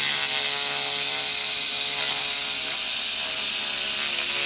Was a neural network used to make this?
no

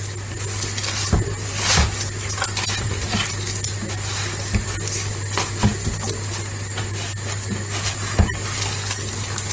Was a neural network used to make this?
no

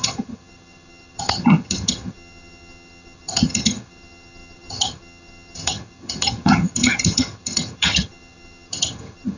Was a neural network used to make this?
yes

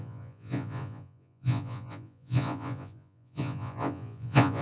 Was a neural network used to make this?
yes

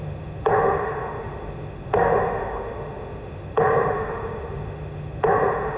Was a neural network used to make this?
yes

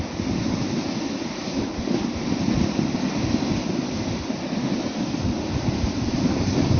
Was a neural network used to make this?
no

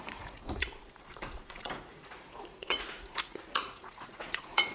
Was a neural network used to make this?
yes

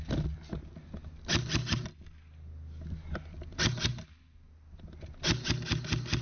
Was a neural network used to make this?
no